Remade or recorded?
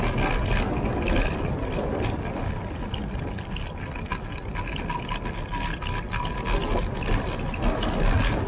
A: recorded